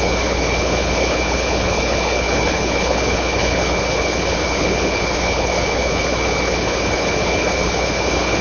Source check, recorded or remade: remade